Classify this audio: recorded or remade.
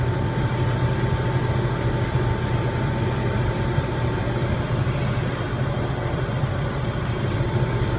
recorded